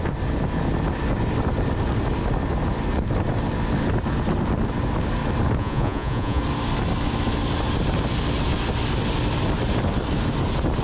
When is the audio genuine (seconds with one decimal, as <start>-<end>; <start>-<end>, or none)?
0.0-5.6; 6.4-10.8